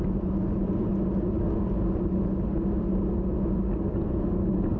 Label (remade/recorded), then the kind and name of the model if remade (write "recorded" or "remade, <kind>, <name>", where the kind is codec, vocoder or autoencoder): recorded